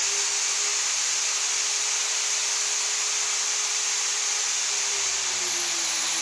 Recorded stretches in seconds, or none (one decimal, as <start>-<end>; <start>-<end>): 0.0-6.2